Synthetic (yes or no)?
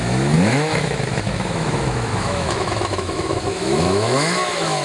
yes